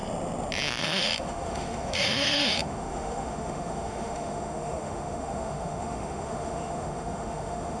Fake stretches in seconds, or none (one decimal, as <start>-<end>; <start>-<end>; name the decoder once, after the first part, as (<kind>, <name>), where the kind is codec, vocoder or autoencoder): 0.8-7.8 (autoencoder, DAC-VAE)